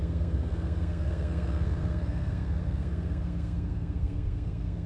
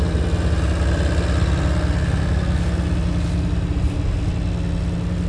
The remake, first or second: first